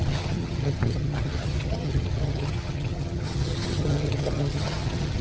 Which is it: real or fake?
fake